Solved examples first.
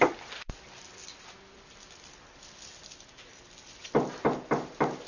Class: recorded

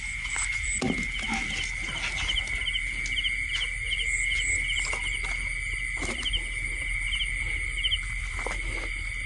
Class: recorded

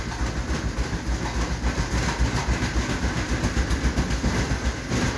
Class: recorded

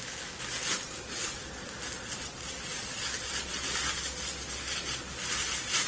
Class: recorded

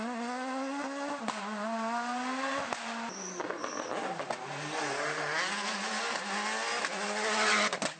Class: recorded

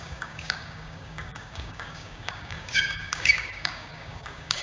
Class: remade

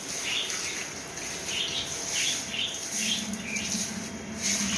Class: recorded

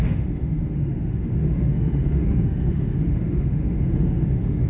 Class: remade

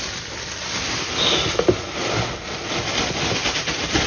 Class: recorded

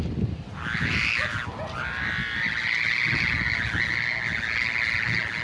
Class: recorded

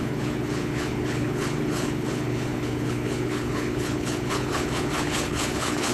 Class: remade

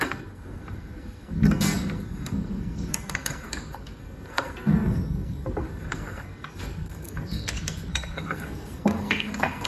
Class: remade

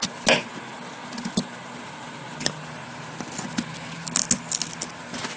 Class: recorded